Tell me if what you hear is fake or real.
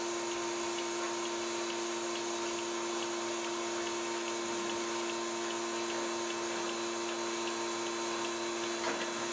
real